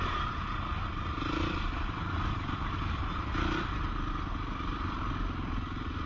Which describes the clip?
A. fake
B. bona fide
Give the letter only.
B